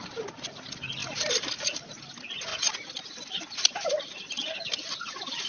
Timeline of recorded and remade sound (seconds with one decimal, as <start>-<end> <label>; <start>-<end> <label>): 0.0-5.5 recorded